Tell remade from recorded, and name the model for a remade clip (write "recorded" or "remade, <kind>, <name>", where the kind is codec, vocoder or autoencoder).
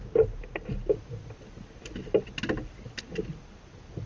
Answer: recorded